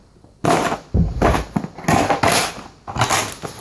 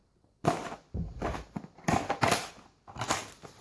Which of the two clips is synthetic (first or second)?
second